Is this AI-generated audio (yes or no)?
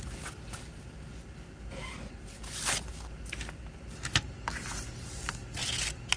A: no